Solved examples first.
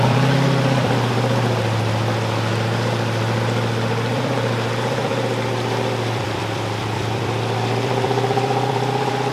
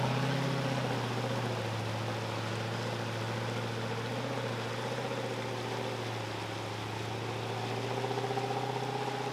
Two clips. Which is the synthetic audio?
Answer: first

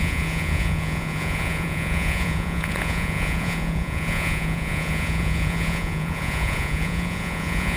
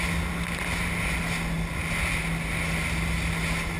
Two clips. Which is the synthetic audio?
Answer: first